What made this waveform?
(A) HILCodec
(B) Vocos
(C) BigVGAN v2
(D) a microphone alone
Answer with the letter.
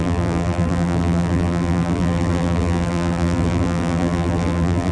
C